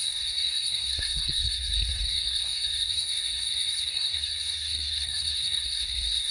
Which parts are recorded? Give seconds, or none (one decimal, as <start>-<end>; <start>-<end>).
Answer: none